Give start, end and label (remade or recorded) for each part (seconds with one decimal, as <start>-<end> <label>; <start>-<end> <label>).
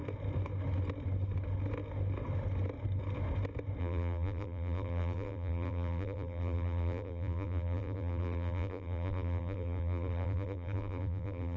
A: 0.0-3.8 recorded; 3.8-11.6 remade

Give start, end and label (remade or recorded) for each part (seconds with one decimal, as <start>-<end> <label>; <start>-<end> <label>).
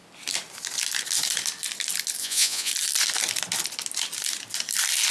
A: 0.0-2.2 recorded; 2.2-2.7 remade; 2.7-5.1 recorded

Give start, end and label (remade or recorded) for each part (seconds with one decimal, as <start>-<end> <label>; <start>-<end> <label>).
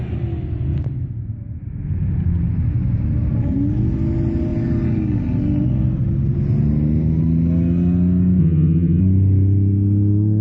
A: 0.0-8.4 recorded; 8.4-9.0 remade; 9.0-10.4 recorded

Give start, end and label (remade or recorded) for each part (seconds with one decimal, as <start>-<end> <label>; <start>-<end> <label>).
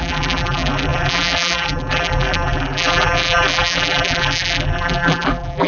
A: 0.0-5.7 remade